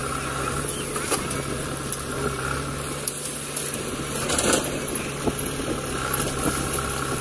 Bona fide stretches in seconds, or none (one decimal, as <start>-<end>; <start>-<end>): 0.0-7.2